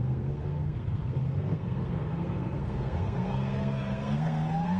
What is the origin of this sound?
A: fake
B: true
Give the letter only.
A